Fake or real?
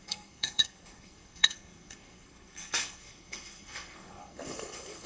fake